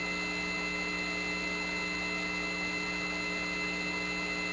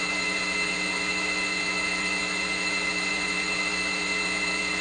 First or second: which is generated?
second